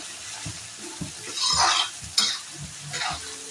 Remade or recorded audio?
recorded